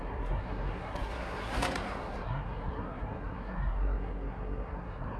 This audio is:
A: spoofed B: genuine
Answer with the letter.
A